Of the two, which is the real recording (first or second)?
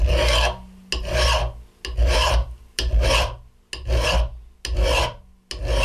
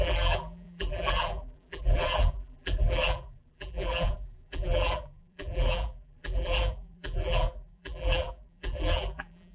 first